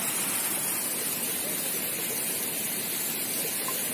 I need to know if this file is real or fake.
real